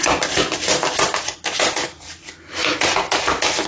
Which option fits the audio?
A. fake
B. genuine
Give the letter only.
B